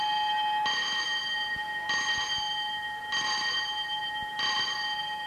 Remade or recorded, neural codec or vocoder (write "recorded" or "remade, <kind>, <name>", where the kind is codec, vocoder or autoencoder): recorded